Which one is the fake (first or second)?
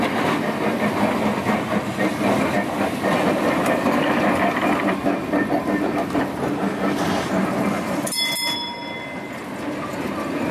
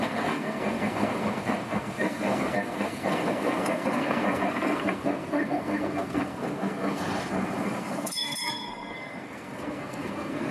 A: second